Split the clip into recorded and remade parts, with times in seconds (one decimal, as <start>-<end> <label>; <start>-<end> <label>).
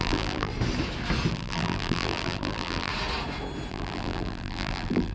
0.0-0.5 remade; 0.5-1.3 recorded; 1.3-2.9 remade; 2.9-3.7 recorded; 3.7-5.1 remade